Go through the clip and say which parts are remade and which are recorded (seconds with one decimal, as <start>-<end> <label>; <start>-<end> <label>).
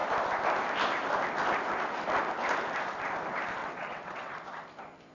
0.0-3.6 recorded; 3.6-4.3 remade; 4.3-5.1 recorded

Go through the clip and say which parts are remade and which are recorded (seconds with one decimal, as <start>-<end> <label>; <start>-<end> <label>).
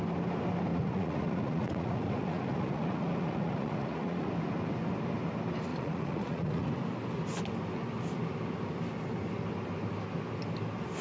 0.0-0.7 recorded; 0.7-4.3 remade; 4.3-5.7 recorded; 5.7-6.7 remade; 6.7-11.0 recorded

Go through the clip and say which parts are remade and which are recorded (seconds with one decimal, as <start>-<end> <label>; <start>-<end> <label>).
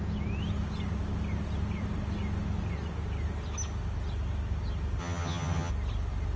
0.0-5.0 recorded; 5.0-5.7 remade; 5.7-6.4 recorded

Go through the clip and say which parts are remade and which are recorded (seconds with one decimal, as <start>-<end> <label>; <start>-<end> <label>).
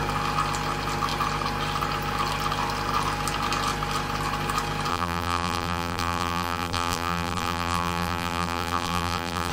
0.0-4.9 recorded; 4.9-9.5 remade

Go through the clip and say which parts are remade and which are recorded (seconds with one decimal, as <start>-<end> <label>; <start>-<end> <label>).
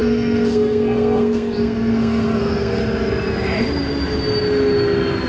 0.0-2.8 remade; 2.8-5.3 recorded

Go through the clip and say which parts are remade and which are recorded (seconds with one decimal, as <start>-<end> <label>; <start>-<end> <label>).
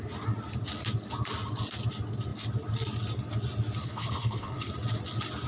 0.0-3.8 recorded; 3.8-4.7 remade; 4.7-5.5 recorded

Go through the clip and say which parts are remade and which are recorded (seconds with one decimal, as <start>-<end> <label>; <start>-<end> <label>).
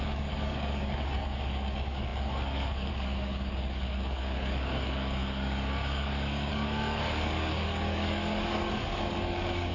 0.0-9.7 remade